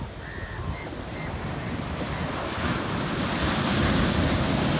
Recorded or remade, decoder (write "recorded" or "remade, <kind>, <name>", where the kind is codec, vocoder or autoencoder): recorded